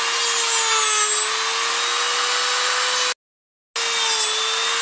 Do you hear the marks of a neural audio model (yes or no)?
no